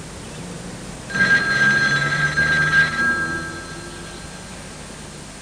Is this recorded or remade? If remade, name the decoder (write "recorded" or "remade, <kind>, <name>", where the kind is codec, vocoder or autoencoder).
recorded